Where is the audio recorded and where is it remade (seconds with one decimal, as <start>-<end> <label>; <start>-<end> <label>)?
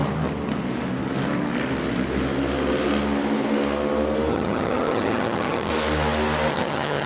0.0-4.3 recorded; 4.3-5.7 remade; 5.7-6.5 recorded; 6.5-7.1 remade